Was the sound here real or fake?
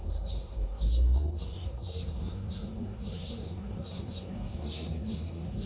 fake